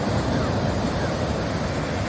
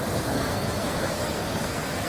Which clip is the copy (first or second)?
second